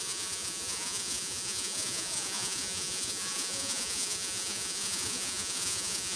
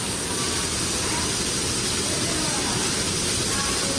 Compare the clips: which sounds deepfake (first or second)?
first